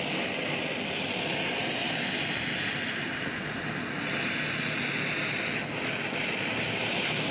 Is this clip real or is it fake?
real